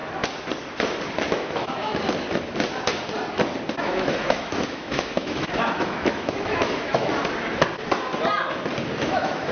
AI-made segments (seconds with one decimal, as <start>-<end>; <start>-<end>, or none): 1.3-1.9; 3.8-7.1; 9.0-9.5